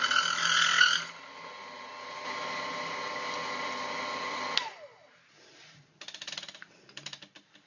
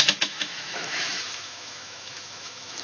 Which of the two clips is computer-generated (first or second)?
second